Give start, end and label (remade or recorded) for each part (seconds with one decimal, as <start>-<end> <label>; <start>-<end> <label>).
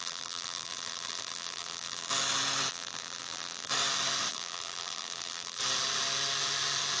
0.0-2.1 remade; 2.1-2.7 recorded; 2.7-3.7 remade; 3.7-4.3 recorded; 4.3-5.6 remade; 5.6-7.0 recorded